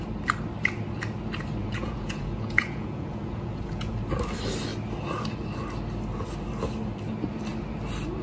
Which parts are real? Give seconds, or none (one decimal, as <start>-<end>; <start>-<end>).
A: 0.0-1.6; 3.9-8.2